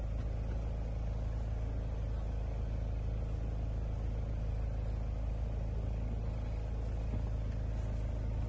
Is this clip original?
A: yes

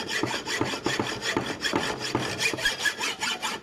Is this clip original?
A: yes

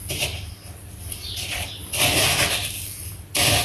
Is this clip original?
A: yes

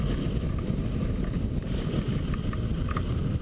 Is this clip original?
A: yes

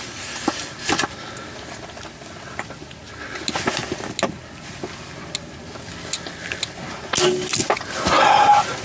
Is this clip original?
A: yes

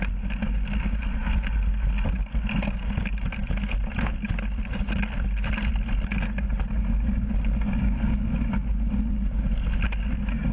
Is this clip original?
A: yes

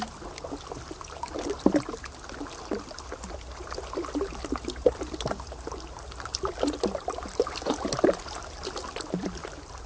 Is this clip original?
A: yes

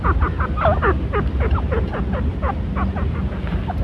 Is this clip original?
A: yes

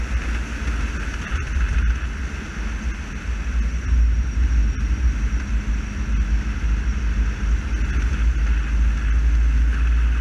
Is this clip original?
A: yes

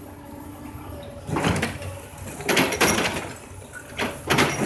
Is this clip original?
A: yes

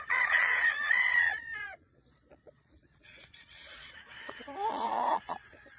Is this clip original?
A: no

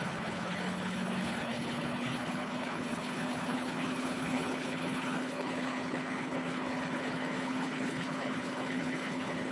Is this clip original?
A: no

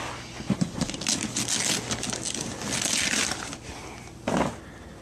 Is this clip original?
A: yes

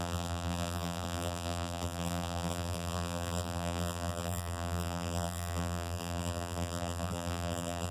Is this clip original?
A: no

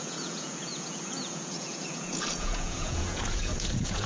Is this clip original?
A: no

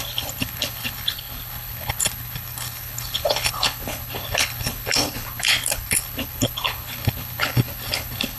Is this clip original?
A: no